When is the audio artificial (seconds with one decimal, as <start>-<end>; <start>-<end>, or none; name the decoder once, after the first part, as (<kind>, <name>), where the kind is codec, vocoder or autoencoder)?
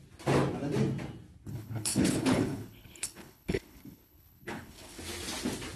1.5-5.0 (codec, HILCodec)